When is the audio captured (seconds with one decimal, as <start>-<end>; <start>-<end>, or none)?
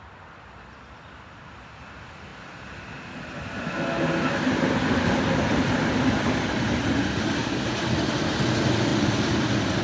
0.0-9.8